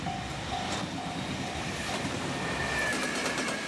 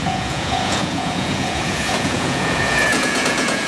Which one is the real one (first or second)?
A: first